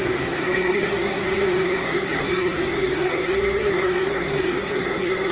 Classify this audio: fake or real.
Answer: fake